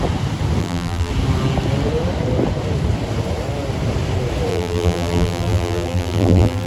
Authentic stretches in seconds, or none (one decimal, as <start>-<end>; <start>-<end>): 0.0-0.6; 1.1-4.5